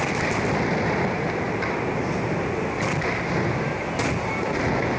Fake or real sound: real